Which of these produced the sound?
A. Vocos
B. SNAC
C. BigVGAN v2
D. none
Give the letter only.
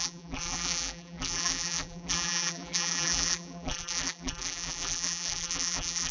C